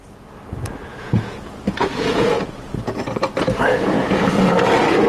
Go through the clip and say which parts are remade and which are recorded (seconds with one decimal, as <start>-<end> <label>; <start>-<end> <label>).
0.0-0.9 recorded; 0.9-2.9 remade; 2.9-3.7 recorded; 3.7-4.3 remade; 4.3-5.1 recorded